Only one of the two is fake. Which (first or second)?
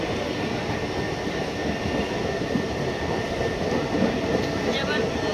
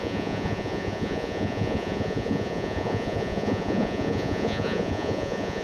second